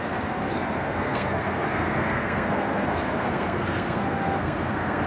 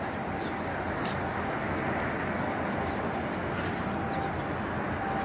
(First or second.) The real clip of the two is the second